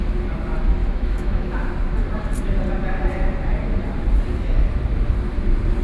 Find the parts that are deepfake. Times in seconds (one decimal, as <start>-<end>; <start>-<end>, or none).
0.8-1.6